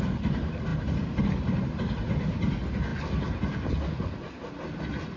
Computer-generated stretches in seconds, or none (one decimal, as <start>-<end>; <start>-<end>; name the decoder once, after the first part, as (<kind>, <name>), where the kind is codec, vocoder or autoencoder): none